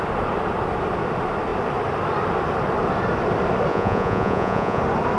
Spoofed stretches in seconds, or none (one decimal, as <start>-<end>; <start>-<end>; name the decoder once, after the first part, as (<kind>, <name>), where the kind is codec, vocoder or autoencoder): 3.7-4.8 (vocoder, Vocos)